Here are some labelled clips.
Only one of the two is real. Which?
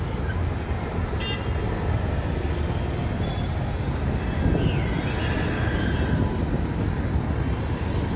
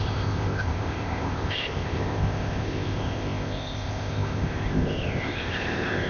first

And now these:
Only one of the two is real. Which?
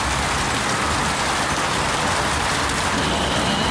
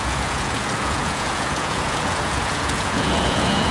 first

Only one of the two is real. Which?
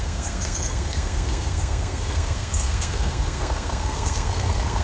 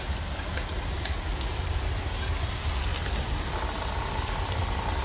second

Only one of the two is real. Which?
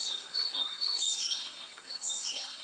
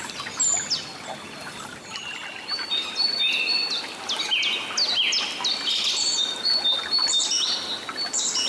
second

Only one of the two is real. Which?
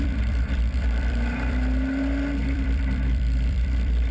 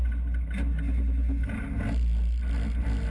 second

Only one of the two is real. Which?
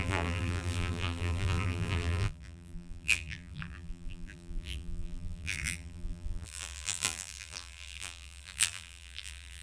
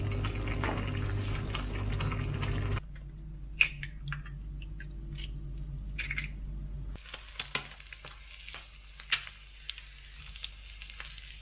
second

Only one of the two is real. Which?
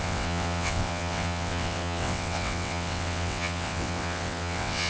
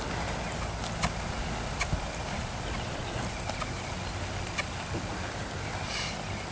second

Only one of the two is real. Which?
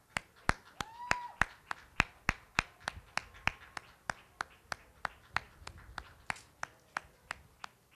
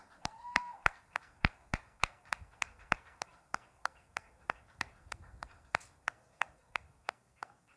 first